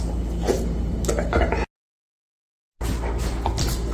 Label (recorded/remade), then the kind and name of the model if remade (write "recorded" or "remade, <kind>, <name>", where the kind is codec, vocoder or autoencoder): recorded